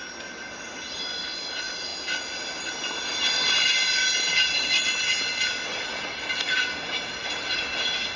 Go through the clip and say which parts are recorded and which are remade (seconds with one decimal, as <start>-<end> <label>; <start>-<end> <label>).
0.0-3.1 recorded; 3.1-3.7 remade; 3.7-8.2 recorded